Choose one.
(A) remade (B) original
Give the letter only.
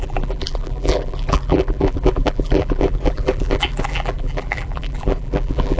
A